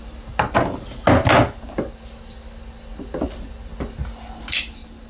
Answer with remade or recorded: recorded